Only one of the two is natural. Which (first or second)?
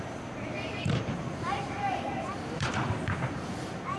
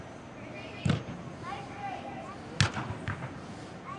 second